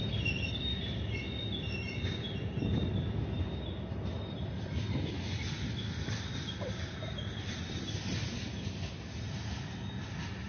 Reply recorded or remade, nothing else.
recorded